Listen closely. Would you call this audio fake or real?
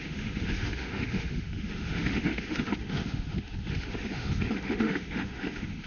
fake